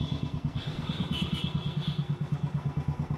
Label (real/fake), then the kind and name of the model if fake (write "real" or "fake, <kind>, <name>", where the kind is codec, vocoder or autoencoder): fake, codec, SNAC